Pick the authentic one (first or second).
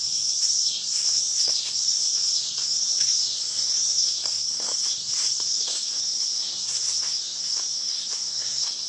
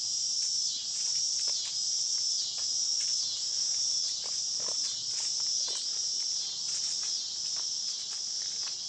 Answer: second